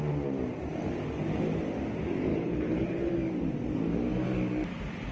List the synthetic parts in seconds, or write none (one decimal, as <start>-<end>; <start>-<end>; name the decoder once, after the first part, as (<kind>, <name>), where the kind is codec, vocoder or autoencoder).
2.3-3.1 (codec, HILCodec)